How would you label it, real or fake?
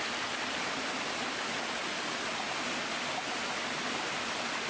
real